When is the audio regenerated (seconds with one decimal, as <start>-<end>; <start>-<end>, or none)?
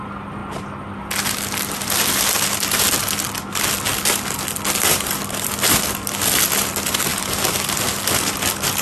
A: none